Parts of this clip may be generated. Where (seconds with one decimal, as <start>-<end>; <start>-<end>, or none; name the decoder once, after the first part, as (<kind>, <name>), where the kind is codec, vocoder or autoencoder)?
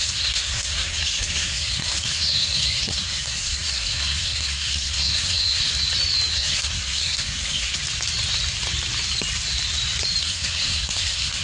0.0-5.7 (codec, SNAC); 6.3-7.8; 10.2-11.4